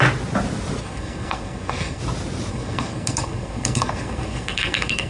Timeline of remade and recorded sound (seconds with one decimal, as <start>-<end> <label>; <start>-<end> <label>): 0.0-0.8 recorded; 0.8-2.0 remade; 2.0-2.5 recorded; 2.5-5.1 remade